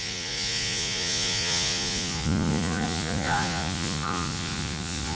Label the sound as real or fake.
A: fake